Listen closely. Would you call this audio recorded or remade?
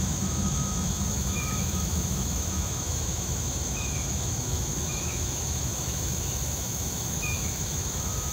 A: remade